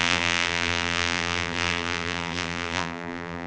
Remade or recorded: remade